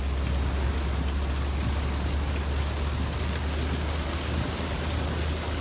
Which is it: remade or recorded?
recorded